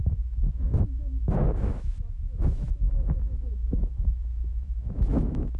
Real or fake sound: fake